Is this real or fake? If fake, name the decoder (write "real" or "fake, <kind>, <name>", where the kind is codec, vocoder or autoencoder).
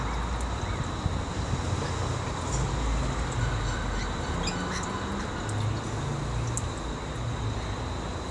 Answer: real